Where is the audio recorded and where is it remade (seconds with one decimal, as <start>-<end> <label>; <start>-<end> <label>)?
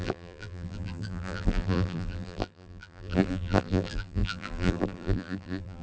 0.0-5.8 remade